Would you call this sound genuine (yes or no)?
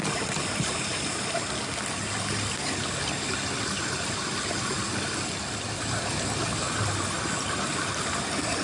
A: yes